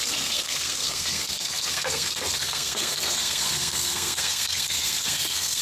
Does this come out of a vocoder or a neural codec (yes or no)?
yes